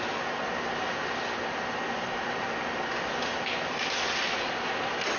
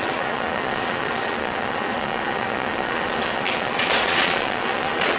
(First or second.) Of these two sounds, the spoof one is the second